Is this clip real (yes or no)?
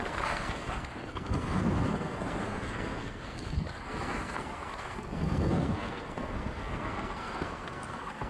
no